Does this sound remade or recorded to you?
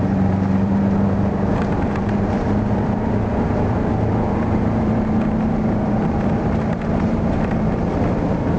remade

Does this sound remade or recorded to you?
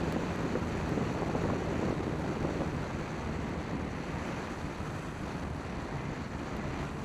recorded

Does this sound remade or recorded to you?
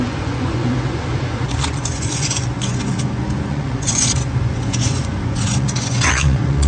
remade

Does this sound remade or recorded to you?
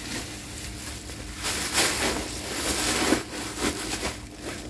recorded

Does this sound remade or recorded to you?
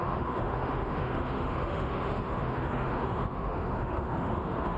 remade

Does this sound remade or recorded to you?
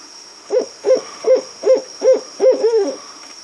remade